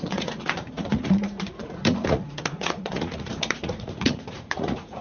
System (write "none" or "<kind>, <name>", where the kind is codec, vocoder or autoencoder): vocoder, Vocos